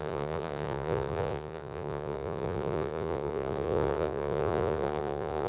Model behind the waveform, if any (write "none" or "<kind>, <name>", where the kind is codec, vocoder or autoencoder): vocoder, Vocos